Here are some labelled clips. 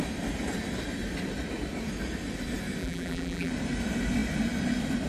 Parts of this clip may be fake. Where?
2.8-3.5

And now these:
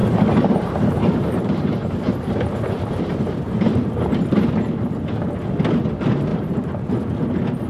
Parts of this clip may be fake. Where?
0.0-4.5; 6.3-7.2

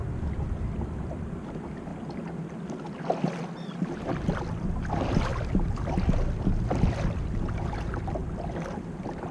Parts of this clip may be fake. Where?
5.3-5.9; 8.2-8.9

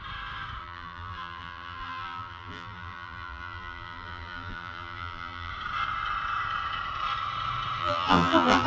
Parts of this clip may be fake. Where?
0.6-5.5; 7.8-8.7

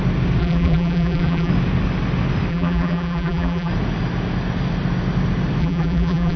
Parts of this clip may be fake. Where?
0.4-1.5; 2.5-3.7; 5.6-6.4

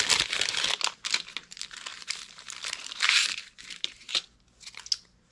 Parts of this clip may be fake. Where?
1.9-4.1

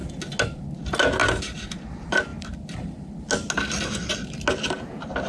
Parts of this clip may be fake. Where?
1.2-1.9